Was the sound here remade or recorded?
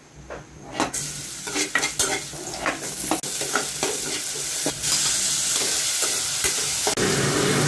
recorded